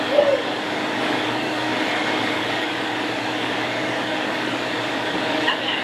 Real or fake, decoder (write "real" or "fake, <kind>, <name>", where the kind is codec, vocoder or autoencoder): fake, codec, DAC